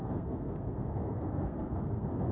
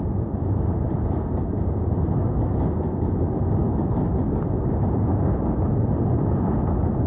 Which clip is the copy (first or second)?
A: first